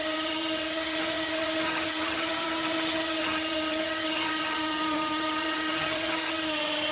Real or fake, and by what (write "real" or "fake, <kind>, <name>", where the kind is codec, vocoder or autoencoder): fake, vocoder, HiFi-GAN